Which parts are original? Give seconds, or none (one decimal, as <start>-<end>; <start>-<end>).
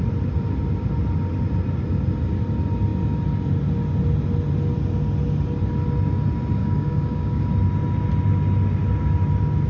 0.0-6.6; 7.4-9.7